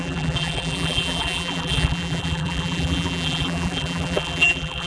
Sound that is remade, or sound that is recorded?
remade